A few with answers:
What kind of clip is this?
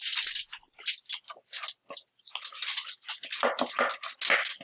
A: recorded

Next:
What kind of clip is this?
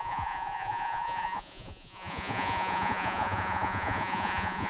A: remade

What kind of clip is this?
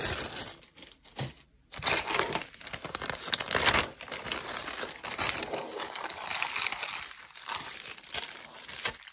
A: recorded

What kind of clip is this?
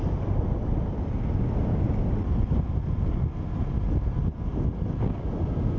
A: recorded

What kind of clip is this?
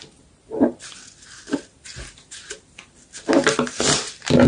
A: recorded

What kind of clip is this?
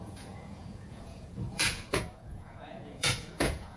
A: remade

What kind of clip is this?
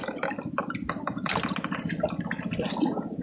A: recorded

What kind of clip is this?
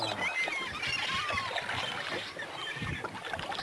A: recorded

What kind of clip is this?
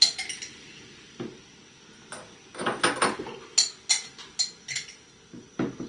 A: recorded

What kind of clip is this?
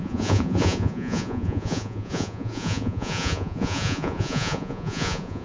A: remade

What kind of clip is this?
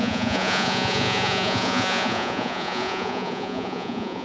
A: remade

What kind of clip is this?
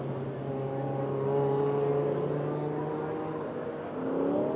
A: recorded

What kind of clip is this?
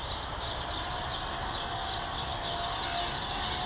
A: recorded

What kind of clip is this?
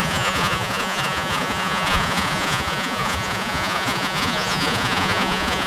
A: remade